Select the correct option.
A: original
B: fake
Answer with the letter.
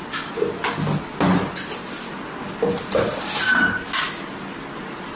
A